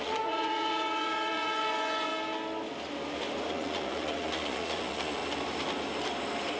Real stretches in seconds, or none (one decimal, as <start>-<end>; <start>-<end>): 2.1-3.5; 5.2-6.6